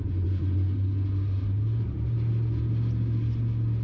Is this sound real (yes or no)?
yes